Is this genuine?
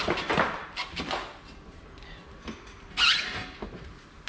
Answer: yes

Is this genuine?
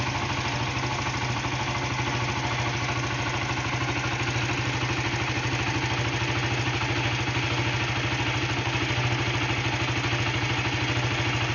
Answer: yes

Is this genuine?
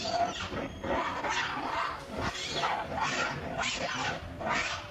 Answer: yes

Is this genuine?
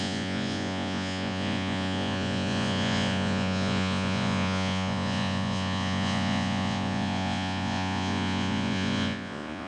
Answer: no